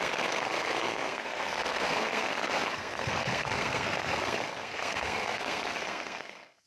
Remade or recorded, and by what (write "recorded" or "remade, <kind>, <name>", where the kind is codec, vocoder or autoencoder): remade, codec, SNAC